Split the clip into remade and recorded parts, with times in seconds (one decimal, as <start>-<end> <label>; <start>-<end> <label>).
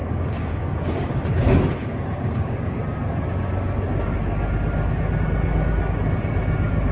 0.0-2.8 remade; 2.8-6.9 recorded